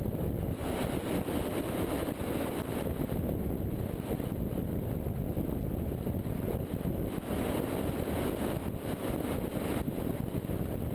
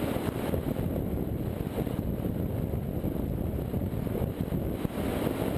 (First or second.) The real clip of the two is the first